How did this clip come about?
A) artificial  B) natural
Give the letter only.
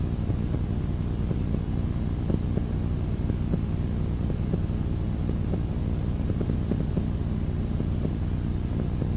B